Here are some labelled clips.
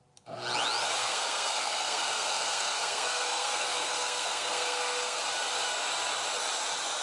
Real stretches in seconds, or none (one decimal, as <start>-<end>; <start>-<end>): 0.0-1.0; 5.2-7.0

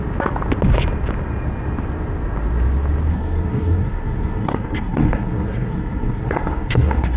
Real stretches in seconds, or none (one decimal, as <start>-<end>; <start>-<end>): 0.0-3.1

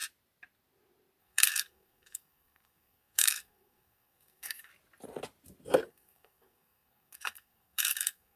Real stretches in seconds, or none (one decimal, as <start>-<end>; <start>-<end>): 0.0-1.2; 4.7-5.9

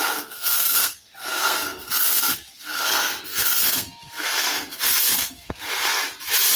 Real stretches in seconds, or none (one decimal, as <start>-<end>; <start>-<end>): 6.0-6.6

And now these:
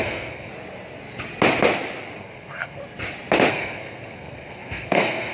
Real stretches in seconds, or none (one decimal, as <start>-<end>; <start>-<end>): 0.5-2.2; 2.8-3.5

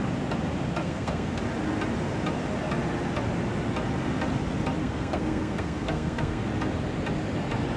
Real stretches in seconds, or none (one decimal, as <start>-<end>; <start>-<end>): 0.0-0.8; 1.4-4.8; 6.5-7.8